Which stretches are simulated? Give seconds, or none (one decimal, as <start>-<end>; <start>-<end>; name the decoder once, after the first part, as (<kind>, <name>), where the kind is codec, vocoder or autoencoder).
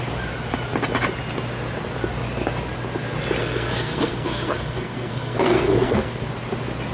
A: 3.4-6.3 (codec, SNAC)